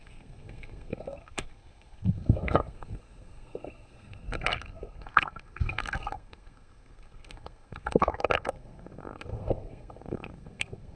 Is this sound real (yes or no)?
no